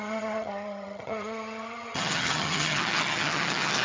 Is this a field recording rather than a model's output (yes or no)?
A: no